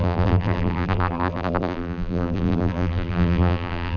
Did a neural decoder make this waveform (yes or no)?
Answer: yes